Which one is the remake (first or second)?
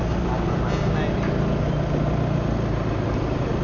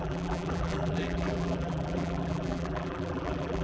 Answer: second